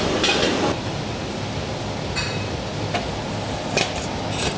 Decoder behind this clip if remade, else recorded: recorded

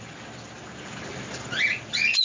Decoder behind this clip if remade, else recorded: recorded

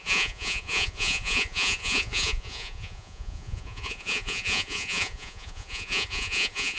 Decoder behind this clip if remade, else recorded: remade, vocoder, Vocos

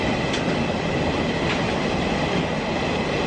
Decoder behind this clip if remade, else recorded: recorded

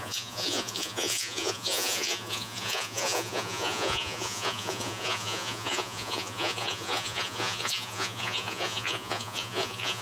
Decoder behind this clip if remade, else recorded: remade, vocoder, Vocos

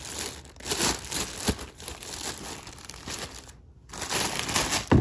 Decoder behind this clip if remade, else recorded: recorded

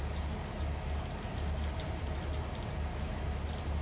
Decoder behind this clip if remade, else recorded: recorded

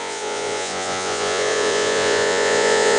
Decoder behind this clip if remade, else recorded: remade, vocoder, Vocos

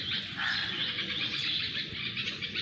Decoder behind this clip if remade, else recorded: remade, vocoder, Vocos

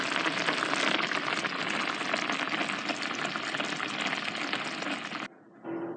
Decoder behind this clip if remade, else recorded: recorded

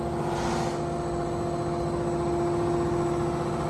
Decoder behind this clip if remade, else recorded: recorded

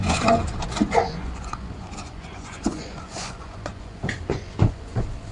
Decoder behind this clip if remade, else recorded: remade, vocoder, Vocos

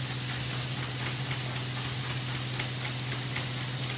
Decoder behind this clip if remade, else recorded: recorded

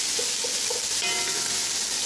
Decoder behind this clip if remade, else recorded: recorded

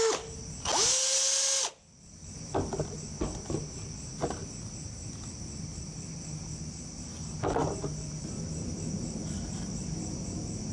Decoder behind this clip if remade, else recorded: recorded